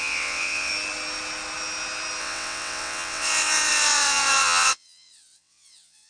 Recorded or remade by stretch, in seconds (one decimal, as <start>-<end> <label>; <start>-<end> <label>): 0.0-0.7 remade; 0.7-2.2 recorded; 2.2-6.1 remade